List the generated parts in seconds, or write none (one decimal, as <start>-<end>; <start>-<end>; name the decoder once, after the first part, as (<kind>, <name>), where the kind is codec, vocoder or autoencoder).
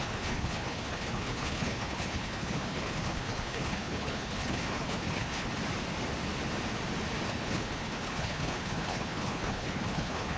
0.0-5.5 (codec, HILCodec); 7.3-10.4